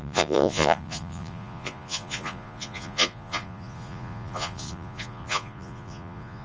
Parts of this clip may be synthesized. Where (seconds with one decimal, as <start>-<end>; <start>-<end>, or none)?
0.0-6.4